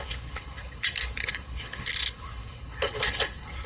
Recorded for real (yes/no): no